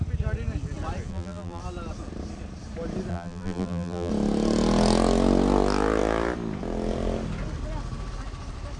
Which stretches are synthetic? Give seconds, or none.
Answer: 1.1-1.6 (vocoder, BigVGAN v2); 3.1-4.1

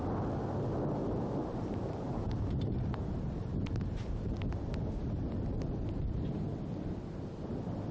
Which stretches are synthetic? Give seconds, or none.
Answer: 1.0-4.4 (vocoder, BigVGAN v2)

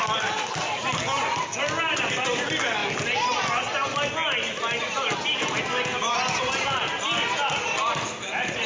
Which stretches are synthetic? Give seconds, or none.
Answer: none

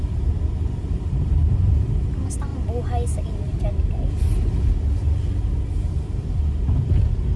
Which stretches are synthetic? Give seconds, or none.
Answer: 0.8-1.7 (vocoder, BigVGAN v2)

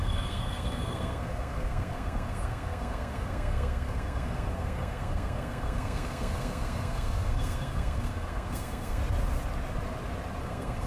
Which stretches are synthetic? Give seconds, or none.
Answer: 0.0-9.0 (codec, SNAC); 10.4-10.9

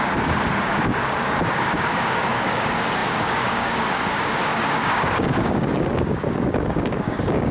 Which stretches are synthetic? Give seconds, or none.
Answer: 0.0-7.5 (codec, DAC)

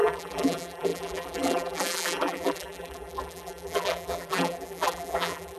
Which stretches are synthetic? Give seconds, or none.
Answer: 0.0-5.6 (vocoder, BigVGAN v2)